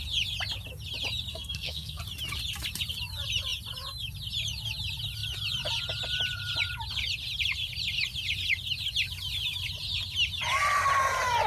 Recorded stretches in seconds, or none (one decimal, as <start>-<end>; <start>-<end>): 0.0-1.3; 2.0-11.5